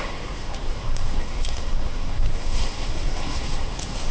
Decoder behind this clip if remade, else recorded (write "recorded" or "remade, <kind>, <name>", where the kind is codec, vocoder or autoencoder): remade, codec, SNAC